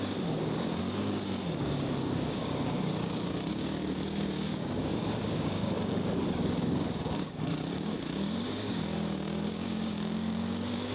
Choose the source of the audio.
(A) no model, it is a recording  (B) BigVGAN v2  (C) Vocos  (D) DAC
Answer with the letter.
D